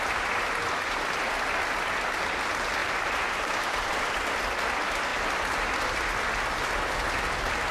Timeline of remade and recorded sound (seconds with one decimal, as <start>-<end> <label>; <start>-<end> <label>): 0.0-2.8 recorded; 2.8-3.9 remade; 3.9-7.7 recorded